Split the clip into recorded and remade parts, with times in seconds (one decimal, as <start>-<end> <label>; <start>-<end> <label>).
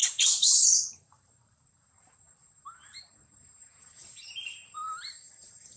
0.0-5.8 remade